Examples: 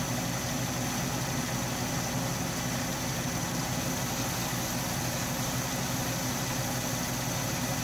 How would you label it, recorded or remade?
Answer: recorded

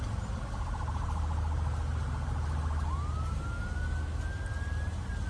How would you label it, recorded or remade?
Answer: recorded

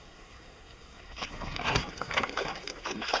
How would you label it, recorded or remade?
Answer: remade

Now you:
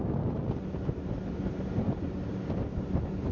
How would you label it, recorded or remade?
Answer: recorded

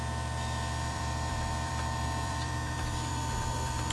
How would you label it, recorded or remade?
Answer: remade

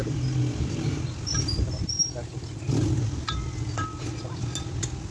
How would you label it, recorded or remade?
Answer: recorded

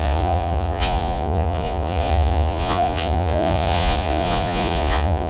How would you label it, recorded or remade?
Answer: remade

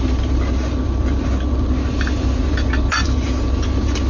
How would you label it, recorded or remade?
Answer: recorded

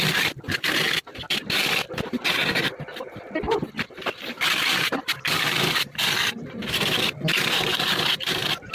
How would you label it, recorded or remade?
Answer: remade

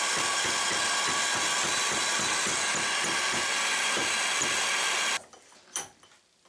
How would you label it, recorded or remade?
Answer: recorded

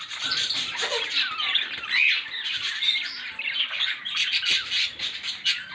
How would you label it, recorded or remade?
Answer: recorded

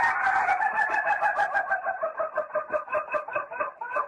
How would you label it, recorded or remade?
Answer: recorded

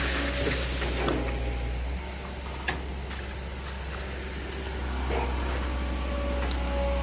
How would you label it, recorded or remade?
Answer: recorded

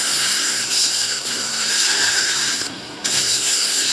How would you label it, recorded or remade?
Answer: remade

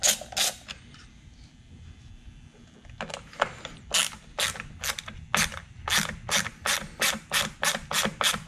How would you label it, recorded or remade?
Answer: recorded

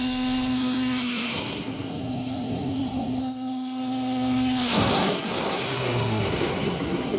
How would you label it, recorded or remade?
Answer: remade